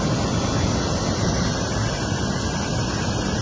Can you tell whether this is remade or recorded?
recorded